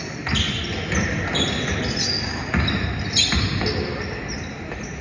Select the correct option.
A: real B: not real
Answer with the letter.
A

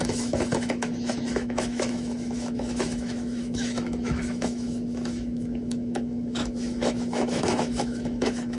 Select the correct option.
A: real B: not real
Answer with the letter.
B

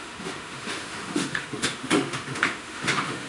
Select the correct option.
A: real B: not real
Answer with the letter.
B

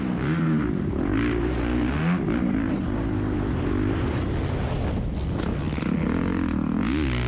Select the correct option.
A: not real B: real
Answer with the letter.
B